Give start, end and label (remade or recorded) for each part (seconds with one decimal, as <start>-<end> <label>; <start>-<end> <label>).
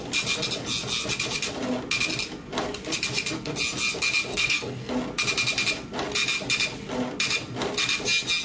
0.0-4.3 recorded; 4.3-4.9 remade; 4.9-8.4 recorded